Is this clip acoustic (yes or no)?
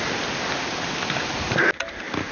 yes